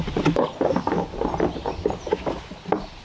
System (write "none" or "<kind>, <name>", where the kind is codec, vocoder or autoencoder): none